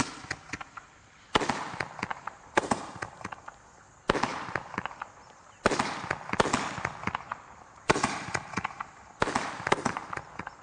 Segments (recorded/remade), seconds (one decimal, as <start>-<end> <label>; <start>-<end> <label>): 0.0-2.1 recorded; 2.1-3.4 remade; 3.4-4.3 recorded; 4.3-5.1 remade; 5.1-7.3 recorded; 7.3-8.8 remade; 8.8-10.6 recorded